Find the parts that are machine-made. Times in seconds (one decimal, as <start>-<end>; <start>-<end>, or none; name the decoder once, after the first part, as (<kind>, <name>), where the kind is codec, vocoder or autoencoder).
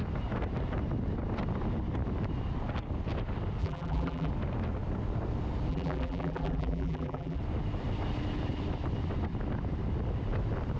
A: 3.6-4.3 (vocoder, BigVGAN v2); 5.7-7.4